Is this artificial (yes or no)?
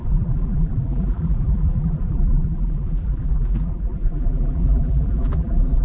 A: yes